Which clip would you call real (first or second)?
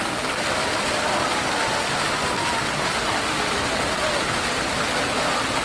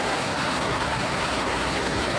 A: first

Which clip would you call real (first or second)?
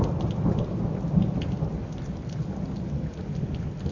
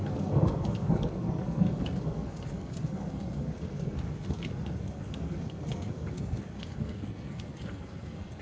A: first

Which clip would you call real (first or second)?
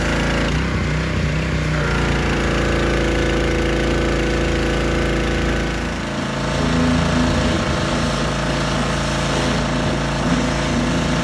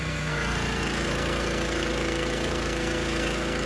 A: first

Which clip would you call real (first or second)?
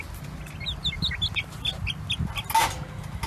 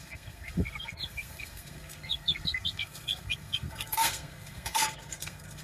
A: first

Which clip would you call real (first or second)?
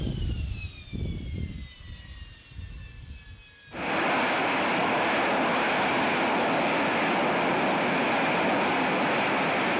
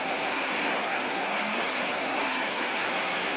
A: first